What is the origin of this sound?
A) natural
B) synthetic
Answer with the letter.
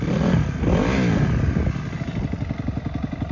A